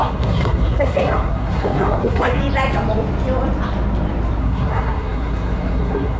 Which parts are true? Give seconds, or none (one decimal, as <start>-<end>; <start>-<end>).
2.4-4.4